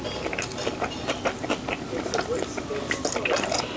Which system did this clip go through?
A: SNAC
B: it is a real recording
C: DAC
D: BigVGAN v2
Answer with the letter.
B